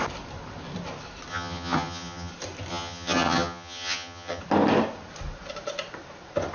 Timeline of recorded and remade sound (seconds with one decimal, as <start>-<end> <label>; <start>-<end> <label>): 0.0-1.3 recorded; 1.3-2.3 remade; 2.3-2.7 recorded; 2.7-4.4 remade; 4.4-6.5 recorded